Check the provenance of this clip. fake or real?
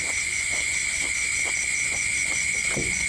fake